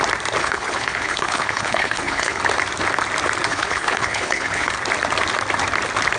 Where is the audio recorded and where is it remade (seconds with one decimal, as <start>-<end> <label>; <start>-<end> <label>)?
0.0-0.4 recorded; 0.4-2.4 remade; 2.4-3.5 recorded; 3.5-4.7 remade; 4.7-6.2 recorded